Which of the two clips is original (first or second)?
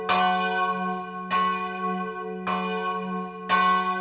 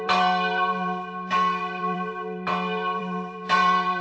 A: first